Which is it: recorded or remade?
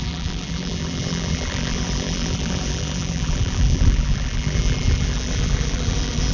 remade